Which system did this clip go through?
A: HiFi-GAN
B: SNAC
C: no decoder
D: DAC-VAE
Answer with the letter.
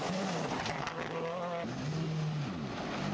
C